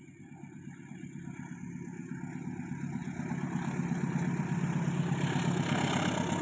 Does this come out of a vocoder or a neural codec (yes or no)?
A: no